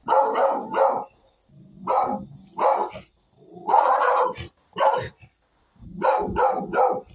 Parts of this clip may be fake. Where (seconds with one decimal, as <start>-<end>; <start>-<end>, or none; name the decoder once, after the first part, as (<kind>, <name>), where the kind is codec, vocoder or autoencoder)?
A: 3.5-4.1 (vocoder, Vocos)